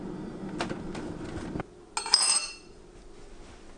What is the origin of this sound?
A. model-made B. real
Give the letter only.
B